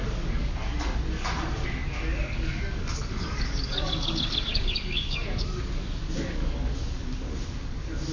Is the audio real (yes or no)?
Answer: no